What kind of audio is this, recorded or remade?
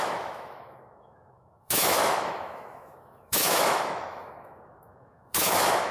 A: remade